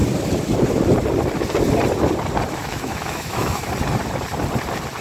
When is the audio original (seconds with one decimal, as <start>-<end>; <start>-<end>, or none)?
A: 0.0-2.6; 3.7-5.0

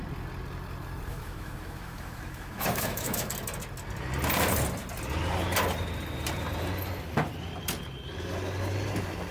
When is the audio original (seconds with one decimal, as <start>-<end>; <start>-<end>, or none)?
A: 0.0-1.1; 3.3-9.3

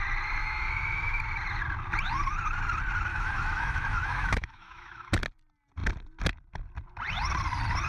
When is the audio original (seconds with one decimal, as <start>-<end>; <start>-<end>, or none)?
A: 0.0-0.4; 1.2-3.1; 5.1-7.9